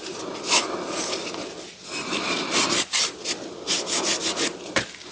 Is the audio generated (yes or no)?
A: no